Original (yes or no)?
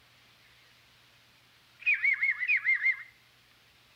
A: yes